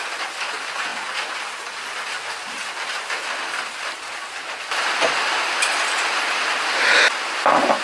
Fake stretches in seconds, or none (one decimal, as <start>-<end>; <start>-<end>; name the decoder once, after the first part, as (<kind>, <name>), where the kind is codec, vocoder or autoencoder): none